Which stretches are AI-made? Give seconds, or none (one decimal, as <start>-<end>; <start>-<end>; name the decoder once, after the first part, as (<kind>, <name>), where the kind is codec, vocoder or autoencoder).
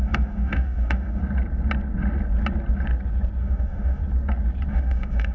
0.0-1.2 (autoencoder, DAC-VAE); 3.4-4.0; 4.7-5.3